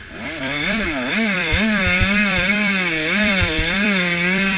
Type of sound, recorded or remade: remade